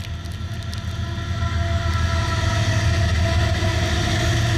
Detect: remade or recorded recorded